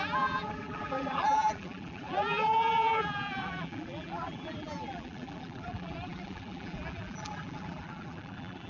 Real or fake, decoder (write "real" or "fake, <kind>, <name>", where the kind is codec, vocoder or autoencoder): fake, vocoder, BigVGAN v2